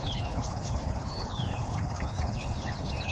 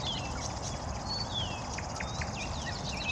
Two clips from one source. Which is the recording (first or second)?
second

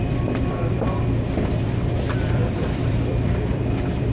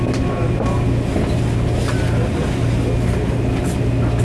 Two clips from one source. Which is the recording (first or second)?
second